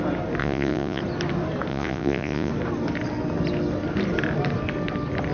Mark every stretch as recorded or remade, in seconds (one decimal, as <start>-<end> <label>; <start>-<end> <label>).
0.0-0.4 recorded; 0.4-1.0 remade; 1.0-1.7 recorded; 1.7-2.5 remade; 2.5-5.3 recorded